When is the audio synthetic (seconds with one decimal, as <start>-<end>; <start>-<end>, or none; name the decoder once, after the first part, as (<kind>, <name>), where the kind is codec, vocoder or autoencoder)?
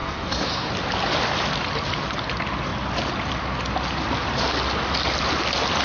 0.0-0.7 (codec, SNAC)